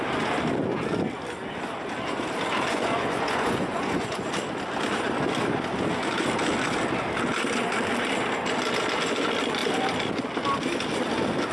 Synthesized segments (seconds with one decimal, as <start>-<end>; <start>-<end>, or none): 2.7-4.3